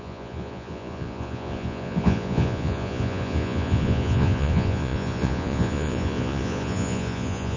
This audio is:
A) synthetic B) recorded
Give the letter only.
A